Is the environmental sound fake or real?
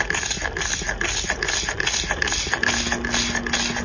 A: real